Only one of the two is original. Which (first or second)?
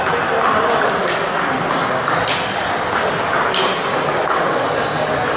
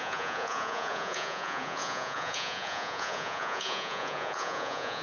first